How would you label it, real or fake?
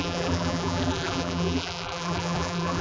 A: fake